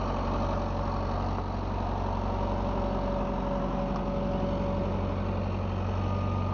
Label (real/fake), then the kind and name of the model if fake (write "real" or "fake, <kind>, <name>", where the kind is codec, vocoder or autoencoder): real